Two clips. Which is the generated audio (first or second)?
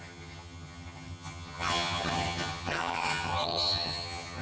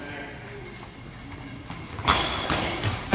first